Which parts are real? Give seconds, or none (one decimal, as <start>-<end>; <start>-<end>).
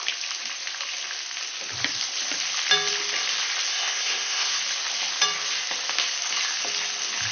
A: 0.0-3.7; 4.6-7.3